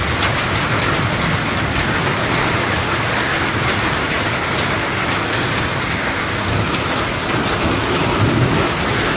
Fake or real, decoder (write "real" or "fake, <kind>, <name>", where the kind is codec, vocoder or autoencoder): real